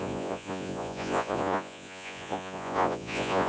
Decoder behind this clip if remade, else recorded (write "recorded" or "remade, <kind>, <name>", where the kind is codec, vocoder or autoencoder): remade, vocoder, Vocos